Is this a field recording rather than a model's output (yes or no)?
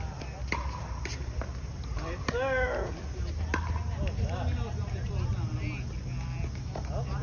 yes